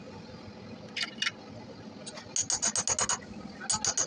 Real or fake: real